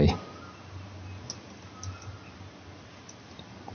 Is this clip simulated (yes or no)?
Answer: no